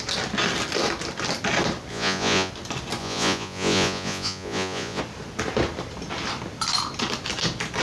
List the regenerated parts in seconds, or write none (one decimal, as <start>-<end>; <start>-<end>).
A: 1.9-2.5; 3.0-5.0

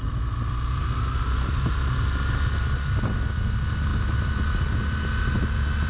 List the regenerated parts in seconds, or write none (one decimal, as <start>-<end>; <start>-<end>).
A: none

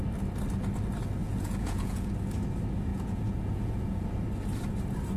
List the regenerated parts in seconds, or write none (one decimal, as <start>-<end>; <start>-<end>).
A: 1.2-2.1; 2.9-4.2

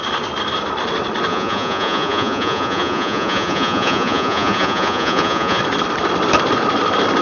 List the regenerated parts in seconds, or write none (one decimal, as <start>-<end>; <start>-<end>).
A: 1.3-5.6

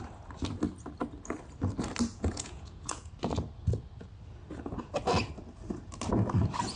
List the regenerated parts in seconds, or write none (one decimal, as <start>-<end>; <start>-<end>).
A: 2.1-3.1

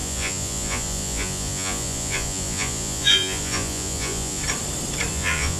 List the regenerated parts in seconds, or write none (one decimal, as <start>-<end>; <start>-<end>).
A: 0.0-4.4; 5.1-5.6

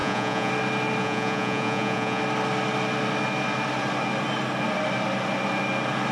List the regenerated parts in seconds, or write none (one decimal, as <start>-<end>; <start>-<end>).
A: 0.0-0.5; 1.0-2.2